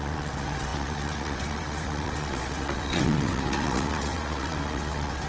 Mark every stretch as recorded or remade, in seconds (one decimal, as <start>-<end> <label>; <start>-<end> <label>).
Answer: 0.0-5.3 remade